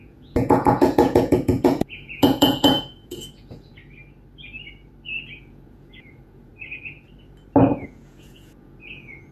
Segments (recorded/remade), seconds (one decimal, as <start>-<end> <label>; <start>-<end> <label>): 0.0-3.8 remade; 3.8-5.4 recorded; 5.4-6.5 remade; 6.5-7.7 recorded; 7.7-9.3 remade